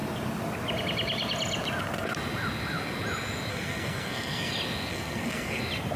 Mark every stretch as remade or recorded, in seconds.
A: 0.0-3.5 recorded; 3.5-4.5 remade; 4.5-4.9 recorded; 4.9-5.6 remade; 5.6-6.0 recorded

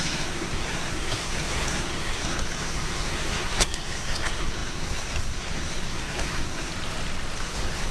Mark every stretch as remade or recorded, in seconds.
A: 0.0-6.7 remade; 6.7-7.4 recorded; 7.4-7.9 remade

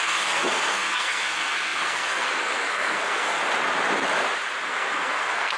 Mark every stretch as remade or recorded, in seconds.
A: 0.0-3.4 remade; 3.4-4.7 recorded; 4.7-5.6 remade

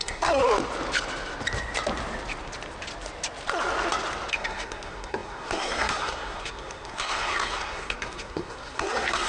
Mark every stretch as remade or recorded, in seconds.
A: 0.0-0.4 remade; 0.4-4.3 recorded; 4.3-9.3 remade

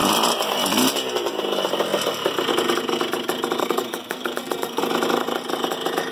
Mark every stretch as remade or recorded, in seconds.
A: 0.0-3.6 recorded; 3.6-4.8 remade; 4.8-6.1 recorded

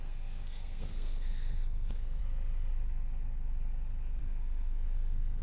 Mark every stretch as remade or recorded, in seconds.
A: 0.0-2.2 remade; 2.2-4.2 recorded; 4.2-5.4 remade